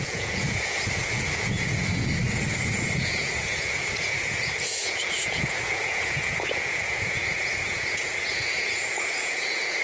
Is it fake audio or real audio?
fake